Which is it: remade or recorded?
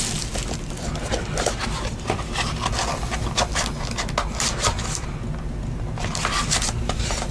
recorded